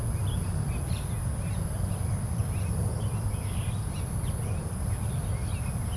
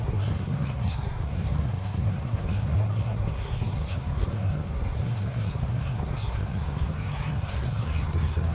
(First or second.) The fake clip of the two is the second